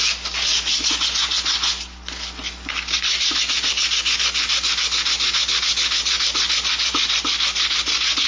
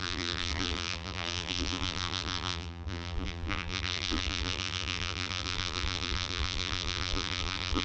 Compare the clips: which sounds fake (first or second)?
second